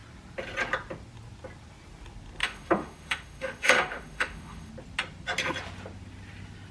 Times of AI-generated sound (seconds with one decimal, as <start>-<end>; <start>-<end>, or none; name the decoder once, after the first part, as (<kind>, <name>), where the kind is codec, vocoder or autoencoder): 2.4-4.7 (autoencoder, DAC-VAE)